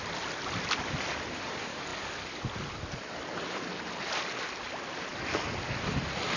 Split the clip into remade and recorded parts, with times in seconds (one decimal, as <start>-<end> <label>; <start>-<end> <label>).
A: 0.0-6.4 recorded